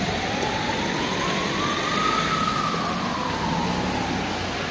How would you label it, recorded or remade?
recorded